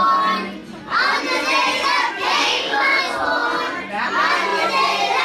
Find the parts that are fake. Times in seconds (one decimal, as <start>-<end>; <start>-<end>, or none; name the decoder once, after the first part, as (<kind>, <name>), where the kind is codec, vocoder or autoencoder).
2.4-3.0 (codec, DAC)